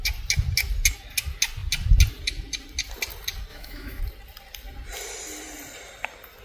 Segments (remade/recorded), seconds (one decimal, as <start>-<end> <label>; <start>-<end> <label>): 0.0-3.5 recorded; 3.5-4.0 remade; 4.0-6.4 recorded